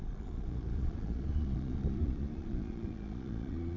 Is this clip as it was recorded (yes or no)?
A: no